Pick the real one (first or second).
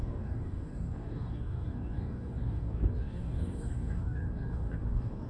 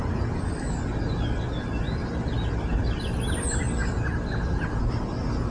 second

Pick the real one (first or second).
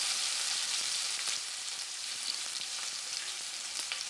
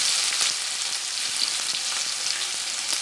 second